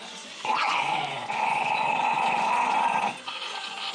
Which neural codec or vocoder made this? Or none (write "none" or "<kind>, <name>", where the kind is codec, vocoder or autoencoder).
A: vocoder, Vocos